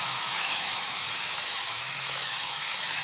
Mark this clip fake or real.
fake